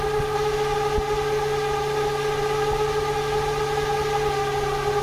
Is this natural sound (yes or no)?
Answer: yes